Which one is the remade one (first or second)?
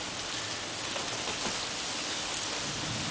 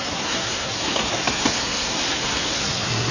second